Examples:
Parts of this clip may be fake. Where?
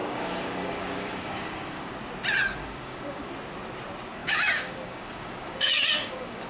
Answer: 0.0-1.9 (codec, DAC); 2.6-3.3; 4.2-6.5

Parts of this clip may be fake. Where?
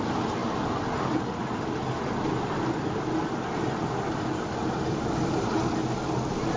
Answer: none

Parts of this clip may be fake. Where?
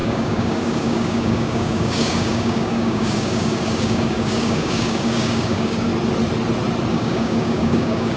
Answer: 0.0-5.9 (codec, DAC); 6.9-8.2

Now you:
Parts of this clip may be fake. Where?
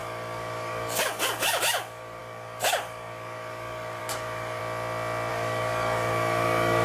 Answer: 0.0-4.6 (codec, DAC); 5.3-6.8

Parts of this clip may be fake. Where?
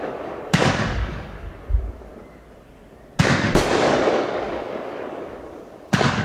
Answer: 0.0-2.1 (codec, DAC); 3.2-6.2